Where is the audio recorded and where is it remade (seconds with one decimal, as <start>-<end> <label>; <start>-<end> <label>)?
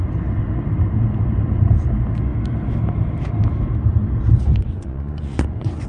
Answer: 0.0-4.5 recorded; 4.5-5.9 remade